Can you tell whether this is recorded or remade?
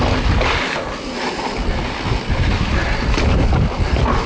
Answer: recorded